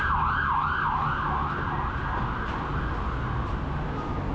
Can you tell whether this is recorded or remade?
recorded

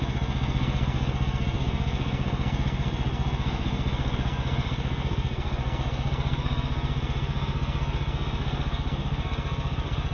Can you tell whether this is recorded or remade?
remade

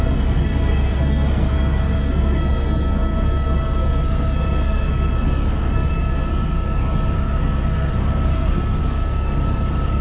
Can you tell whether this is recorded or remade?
remade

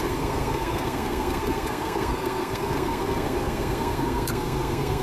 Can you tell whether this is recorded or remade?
remade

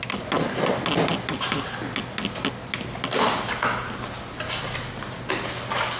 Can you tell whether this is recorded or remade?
recorded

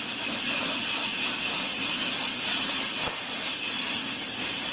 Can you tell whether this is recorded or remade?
recorded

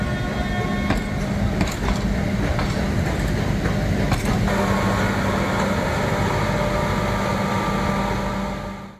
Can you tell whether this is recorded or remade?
recorded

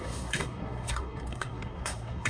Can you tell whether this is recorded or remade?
remade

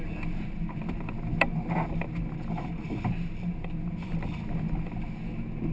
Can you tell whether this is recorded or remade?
recorded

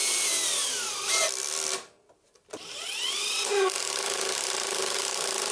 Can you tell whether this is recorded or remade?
recorded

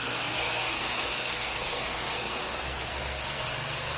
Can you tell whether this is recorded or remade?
remade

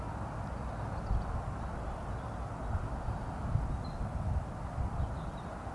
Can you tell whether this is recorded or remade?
recorded